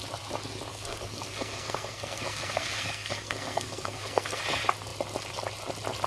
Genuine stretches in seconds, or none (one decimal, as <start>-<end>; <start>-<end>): 0.0-0.7; 4.4-6.1